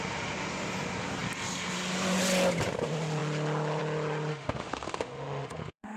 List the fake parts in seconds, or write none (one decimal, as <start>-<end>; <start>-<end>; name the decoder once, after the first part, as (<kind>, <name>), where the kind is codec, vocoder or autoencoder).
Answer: 4.3-6.0 (autoencoder, DAC-VAE)